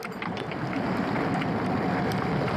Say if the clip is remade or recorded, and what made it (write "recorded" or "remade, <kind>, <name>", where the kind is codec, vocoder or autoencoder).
recorded